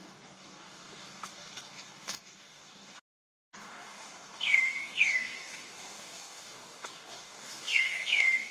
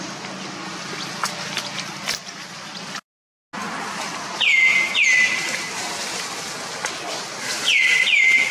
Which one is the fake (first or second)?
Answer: first